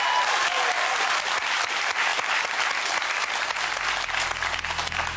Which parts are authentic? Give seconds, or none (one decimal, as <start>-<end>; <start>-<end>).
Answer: 0.0-5.2